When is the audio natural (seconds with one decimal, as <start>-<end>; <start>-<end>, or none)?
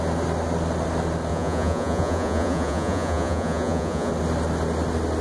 0.0-1.3; 4.1-5.2